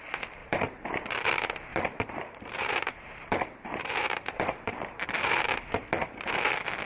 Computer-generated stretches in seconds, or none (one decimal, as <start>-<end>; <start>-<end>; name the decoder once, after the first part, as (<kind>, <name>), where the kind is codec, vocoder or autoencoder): 0.4-1.1 (vocoder, BigVGAN v2); 1.7-5.8